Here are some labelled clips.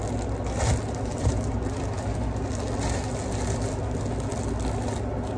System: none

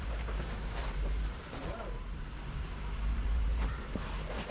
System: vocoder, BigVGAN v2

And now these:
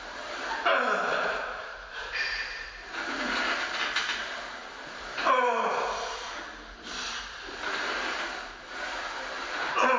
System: vocoder, BigVGAN v2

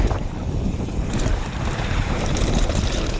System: vocoder, BigVGAN v2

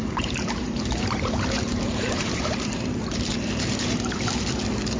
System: vocoder, BigVGAN v2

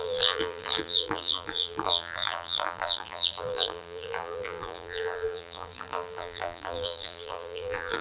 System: vocoder, BigVGAN v2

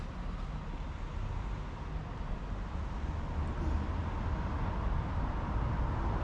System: none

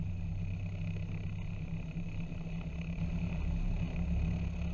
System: none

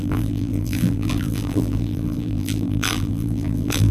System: vocoder, BigVGAN v2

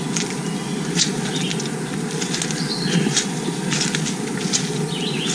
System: none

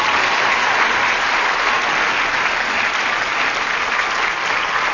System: none